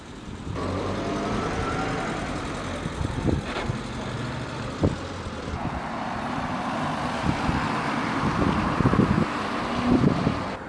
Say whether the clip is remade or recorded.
remade